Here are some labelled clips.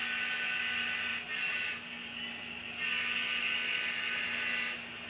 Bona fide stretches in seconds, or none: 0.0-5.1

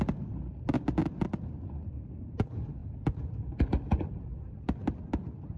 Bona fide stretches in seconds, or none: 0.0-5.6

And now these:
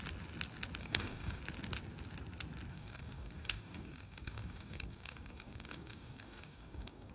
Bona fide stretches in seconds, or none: 0.0-0.8; 1.4-2.7

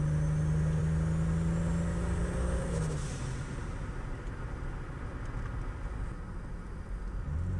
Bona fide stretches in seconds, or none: 0.0-7.6

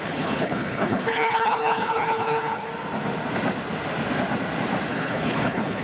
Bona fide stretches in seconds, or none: 2.7-4.9

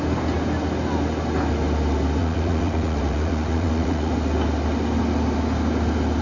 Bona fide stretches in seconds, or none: 0.0-2.2; 4.1-6.2